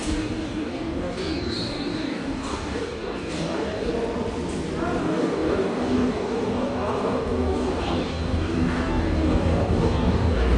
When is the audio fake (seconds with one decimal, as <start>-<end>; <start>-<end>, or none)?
0.0-3.9; 5.0-10.6